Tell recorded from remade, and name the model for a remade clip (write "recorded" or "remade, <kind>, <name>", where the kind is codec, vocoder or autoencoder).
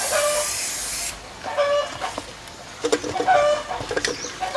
recorded